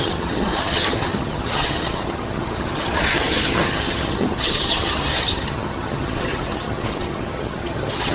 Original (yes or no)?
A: no